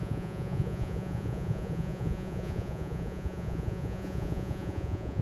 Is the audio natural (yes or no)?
no